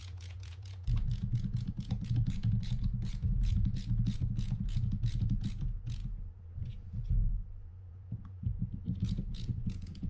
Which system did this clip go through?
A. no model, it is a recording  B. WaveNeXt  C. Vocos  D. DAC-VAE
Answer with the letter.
C